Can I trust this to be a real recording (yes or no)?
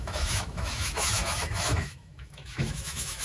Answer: no